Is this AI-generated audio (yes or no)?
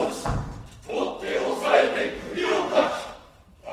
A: yes